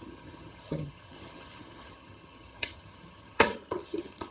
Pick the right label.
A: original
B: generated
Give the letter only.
B